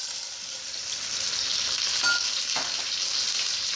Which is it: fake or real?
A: real